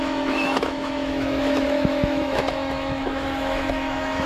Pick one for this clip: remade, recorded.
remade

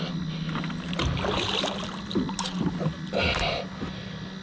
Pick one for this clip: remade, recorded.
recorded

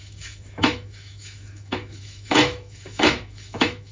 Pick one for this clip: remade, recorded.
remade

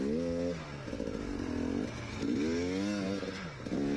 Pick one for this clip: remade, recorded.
recorded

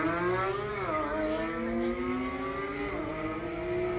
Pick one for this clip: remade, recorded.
recorded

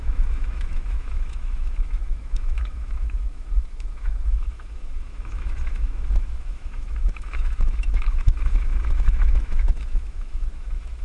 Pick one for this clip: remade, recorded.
remade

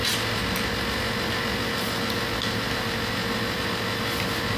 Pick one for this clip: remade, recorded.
recorded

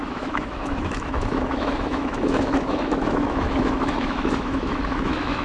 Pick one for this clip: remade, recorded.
remade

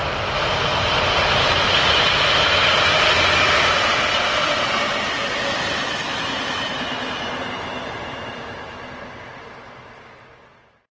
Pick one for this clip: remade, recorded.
recorded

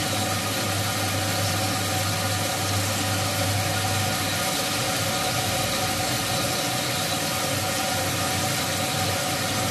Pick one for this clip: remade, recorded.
recorded